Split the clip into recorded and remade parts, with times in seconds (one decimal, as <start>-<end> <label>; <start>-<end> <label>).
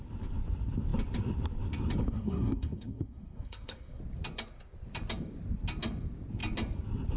0.0-2.0 recorded; 2.0-4.0 remade; 4.0-7.2 recorded